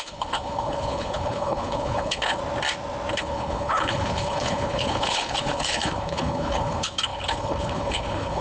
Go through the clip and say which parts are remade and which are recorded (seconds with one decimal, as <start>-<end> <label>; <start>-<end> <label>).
0.0-2.4 remade; 2.4-3.1 recorded; 3.1-8.4 remade